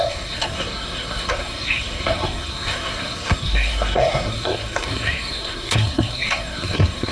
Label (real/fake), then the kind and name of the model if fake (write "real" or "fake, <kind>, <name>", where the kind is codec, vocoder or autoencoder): fake, codec, SNAC